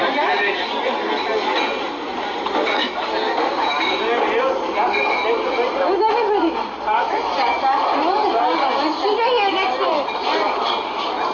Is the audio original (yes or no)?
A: yes